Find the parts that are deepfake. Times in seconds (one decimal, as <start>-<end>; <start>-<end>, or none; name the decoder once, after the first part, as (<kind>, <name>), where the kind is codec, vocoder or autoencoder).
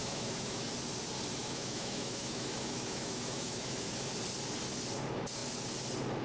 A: 0.0-0.7 (autoencoder, DAC-VAE); 1.4-4.1